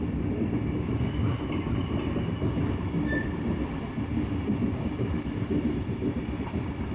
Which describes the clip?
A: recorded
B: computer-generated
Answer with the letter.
A